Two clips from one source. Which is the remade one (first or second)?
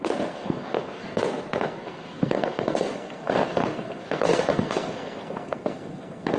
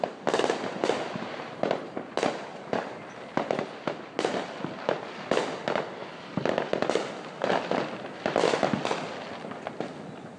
first